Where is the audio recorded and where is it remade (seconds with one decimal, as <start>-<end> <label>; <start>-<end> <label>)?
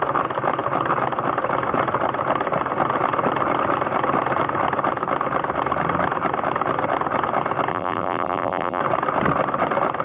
0.0-7.7 recorded; 7.7-8.8 remade; 8.8-10.0 recorded